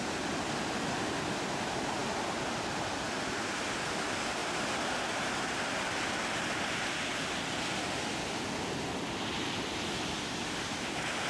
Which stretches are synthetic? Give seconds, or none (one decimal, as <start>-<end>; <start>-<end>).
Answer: none